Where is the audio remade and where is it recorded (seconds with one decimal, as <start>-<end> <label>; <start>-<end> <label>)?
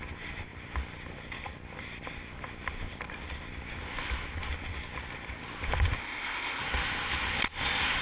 0.0-6.0 recorded; 6.0-6.6 remade; 6.6-8.0 recorded